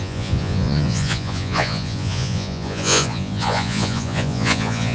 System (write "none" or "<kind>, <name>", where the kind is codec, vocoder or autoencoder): vocoder, Vocos